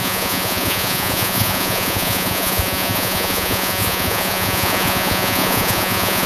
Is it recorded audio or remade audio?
remade